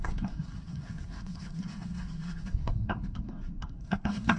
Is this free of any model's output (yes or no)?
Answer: no